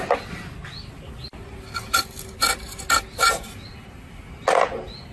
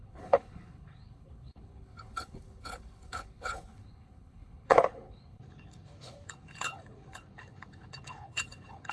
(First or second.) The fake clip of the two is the second